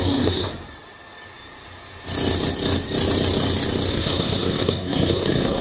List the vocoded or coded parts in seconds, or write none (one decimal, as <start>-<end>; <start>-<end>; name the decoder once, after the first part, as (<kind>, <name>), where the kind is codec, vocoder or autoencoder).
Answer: 0.0-0.5 (codec, SNAC); 3.9-5.6